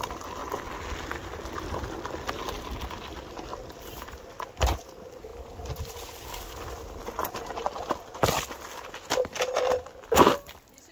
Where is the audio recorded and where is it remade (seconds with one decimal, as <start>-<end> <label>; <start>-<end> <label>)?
0.0-0.4 remade; 0.4-1.9 recorded; 1.9-3.5 remade; 3.5-4.2 recorded; 4.2-5.3 remade; 5.3-6.3 recorded; 6.3-7.2 remade; 7.2-10.2 recorded; 10.2-10.9 remade